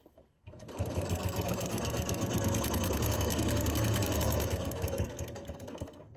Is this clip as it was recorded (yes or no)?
no